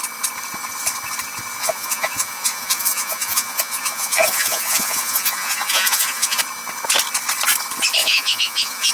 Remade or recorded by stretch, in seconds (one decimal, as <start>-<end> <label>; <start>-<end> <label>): 0.0-1.6 recorded; 1.6-6.4 remade; 6.4-8.0 recorded; 8.0-8.9 remade